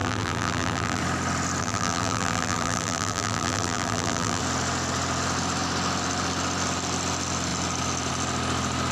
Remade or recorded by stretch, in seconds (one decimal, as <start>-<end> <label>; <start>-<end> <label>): 0.0-1.0 remade; 1.0-1.6 recorded; 1.6-4.4 remade; 4.4-8.9 recorded

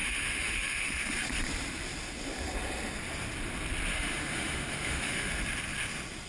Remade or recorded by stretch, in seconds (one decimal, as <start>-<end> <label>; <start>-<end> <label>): 0.0-1.2 remade; 1.2-3.9 recorded; 3.9-5.3 remade; 5.3-6.3 recorded